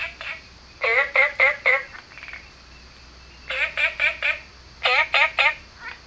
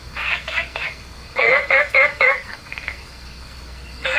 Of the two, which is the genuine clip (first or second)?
first